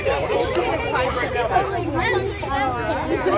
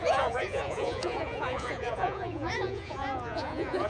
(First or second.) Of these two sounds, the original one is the first